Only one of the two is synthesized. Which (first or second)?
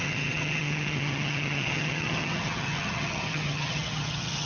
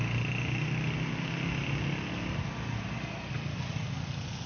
first